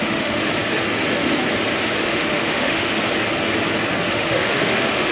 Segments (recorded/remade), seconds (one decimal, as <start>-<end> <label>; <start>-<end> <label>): 0.0-0.5 remade; 0.5-2.0 recorded; 2.0-2.8 remade; 2.8-4.1 recorded; 4.1-5.1 remade